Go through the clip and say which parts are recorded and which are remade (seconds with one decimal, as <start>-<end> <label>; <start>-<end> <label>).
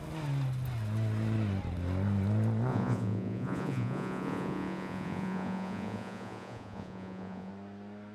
0.0-2.7 recorded; 2.7-7.5 remade; 7.5-8.1 recorded